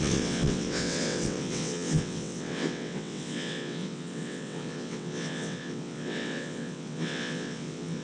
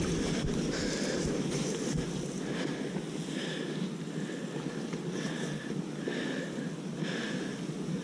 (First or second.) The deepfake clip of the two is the first